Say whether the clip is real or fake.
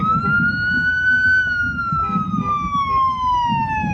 real